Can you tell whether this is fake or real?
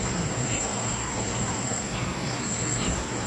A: fake